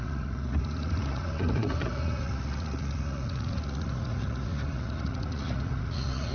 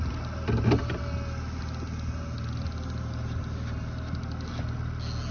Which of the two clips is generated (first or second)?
first